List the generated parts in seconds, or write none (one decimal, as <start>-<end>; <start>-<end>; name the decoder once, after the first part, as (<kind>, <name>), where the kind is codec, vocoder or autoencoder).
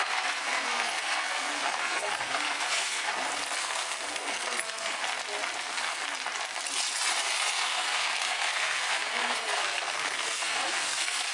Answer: 0.0-3.1 (codec, SNAC); 3.6-5.0; 5.6-6.0; 7.5-11.3